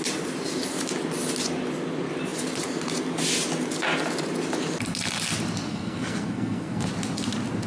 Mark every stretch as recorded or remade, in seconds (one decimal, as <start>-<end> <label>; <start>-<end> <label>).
0.0-5.7 recorded; 5.7-6.9 remade; 6.9-7.7 recorded